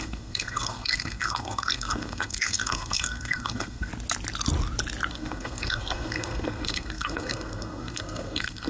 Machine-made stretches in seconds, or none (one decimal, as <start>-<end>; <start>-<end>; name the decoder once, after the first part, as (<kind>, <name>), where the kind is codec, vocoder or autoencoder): 0.0-3.9 (codec, SNAC); 5.1-8.7